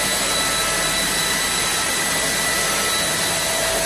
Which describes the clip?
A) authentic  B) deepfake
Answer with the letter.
A